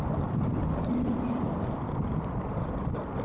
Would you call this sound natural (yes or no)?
no